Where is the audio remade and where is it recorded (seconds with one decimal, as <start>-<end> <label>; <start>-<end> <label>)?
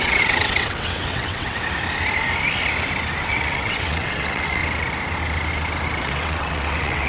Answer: 0.0-1.6 remade; 1.6-3.2 recorded; 3.2-4.6 remade; 4.6-6.0 recorded; 6.0-7.1 remade